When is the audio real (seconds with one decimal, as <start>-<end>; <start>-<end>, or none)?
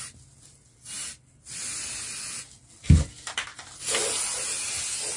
0.0-5.2